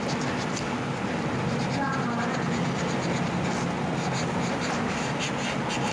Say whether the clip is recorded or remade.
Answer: recorded